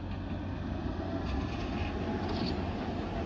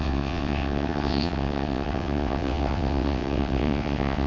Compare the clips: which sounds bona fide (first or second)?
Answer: first